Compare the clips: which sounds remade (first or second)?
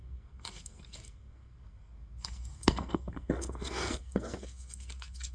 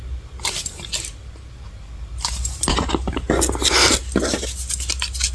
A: first